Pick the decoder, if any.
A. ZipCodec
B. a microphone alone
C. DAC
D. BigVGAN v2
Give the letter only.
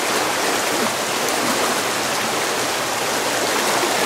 B